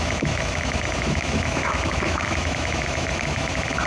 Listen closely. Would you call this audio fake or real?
fake